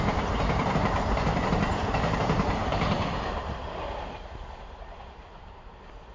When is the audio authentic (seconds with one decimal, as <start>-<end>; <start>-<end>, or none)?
none